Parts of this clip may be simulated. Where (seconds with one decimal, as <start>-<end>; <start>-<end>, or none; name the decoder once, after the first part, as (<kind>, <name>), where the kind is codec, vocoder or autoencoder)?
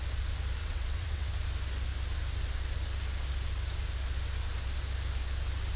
0.6-1.3 (vocoder, WaveNeXt)